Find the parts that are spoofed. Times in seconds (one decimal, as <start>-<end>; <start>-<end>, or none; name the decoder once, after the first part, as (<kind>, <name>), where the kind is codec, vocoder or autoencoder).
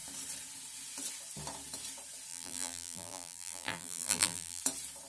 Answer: 2.3-4.6 (vocoder, BigVGAN v2)